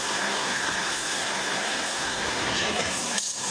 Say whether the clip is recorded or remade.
remade